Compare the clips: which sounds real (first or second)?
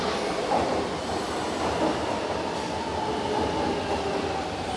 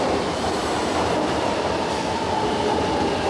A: first